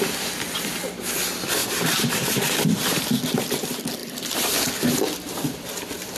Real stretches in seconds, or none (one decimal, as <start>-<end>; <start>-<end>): 0.0-1.6; 3.1-4.0